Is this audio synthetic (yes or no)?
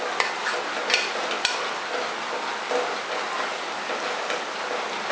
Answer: no